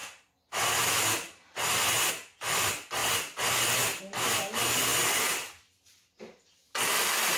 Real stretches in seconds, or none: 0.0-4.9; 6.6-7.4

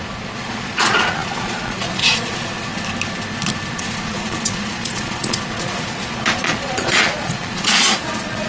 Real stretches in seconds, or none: 2.7-3.7

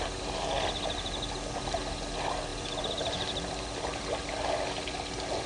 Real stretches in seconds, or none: 0.0-5.5

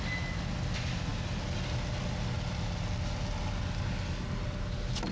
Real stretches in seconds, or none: 0.0-5.1

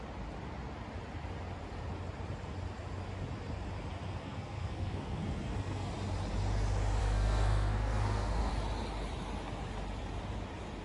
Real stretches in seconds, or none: 0.0-4.2; 5.9-7.0; 8.5-10.8

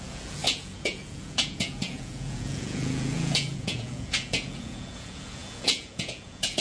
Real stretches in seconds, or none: none

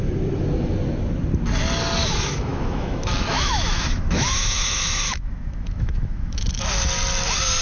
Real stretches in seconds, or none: 0.0-2.0; 6.6-7.6

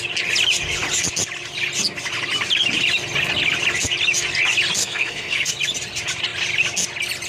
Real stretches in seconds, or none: 0.0-4.8; 5.5-7.3